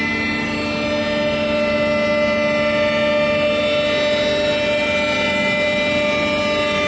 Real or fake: real